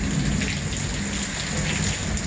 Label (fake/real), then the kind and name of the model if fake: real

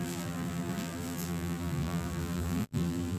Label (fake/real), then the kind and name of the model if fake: fake, vocoder, BigVGAN v2